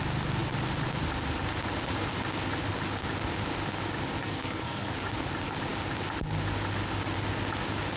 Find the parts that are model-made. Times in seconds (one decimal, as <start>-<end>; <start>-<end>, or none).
4.2-4.9